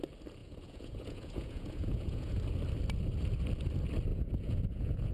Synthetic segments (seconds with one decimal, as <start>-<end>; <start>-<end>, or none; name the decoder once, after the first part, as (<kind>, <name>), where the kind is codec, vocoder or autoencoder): 0.4-2.4 (vocoder, Vocos); 4.1-5.1